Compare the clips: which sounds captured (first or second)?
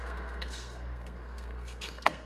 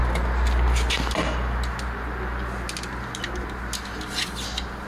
second